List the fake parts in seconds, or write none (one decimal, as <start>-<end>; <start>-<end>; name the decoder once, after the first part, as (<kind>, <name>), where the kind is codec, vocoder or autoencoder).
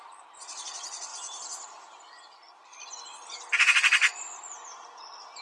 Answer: none